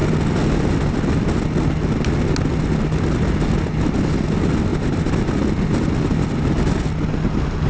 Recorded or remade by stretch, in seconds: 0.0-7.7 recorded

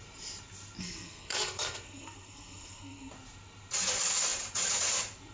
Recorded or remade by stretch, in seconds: 0.0-0.8 recorded; 0.8-3.1 remade; 3.1-5.3 recorded

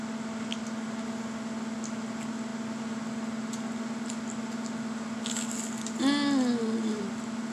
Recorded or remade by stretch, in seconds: 0.0-7.5 recorded